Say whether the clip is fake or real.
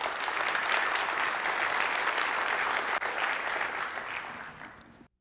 real